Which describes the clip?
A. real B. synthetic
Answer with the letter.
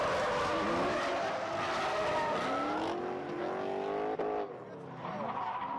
A